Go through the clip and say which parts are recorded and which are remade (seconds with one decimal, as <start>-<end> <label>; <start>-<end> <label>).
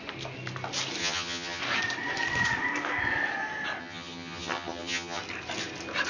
0.0-1.0 recorded; 1.0-1.6 remade; 1.6-3.8 recorded; 3.8-5.2 remade; 5.2-6.1 recorded